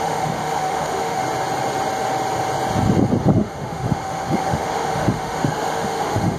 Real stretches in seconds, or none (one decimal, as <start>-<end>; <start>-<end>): 1.2-3.2